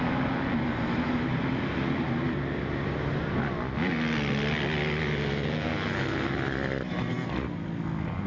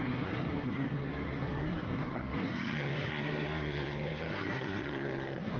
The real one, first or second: first